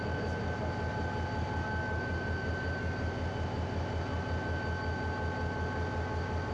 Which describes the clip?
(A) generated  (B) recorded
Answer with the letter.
B